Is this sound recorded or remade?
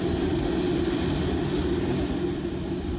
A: recorded